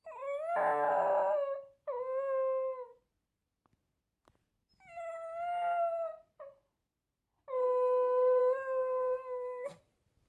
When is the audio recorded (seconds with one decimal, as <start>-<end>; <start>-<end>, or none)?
0.0-8.4; 9.8-10.3